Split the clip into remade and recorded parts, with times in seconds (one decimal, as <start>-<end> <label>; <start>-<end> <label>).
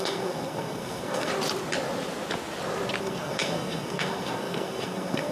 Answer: 0.0-1.3 remade; 1.3-3.0 recorded; 3.0-5.3 remade